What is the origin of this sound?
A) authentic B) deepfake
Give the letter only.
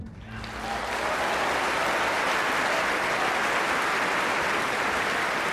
A